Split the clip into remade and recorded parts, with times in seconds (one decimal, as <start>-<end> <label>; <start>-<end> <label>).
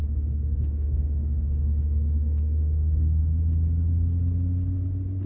0.0-3.2 remade; 3.2-5.3 recorded